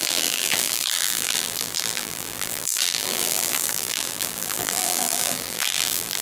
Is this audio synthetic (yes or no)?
yes